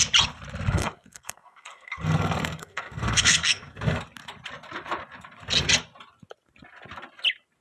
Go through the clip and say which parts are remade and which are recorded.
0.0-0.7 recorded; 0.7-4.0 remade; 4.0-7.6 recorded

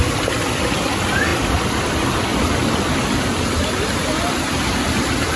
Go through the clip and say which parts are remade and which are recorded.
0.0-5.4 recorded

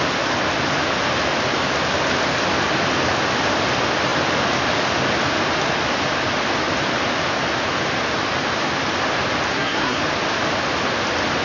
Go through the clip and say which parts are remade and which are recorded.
0.0-9.5 recorded; 9.5-10.0 remade; 10.0-11.4 recorded

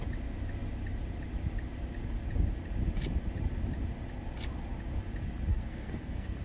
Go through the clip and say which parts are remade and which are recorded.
0.0-5.5 recorded; 5.5-6.4 remade